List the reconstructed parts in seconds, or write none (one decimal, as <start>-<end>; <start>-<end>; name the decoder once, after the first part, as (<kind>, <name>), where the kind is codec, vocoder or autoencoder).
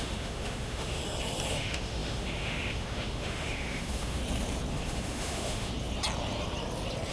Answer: 0.0-1.0 (autoencoder, DAC-VAE); 1.5-4.2; 4.7-5.7